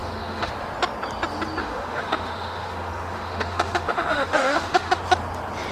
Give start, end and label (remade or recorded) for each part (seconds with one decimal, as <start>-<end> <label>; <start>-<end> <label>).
0.0-0.5 remade; 0.5-1.6 recorded; 1.6-5.0 remade; 5.0-5.7 recorded